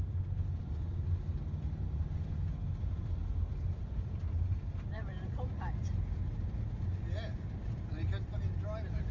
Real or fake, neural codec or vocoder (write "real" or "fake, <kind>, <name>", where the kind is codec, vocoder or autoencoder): real